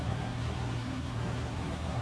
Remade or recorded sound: remade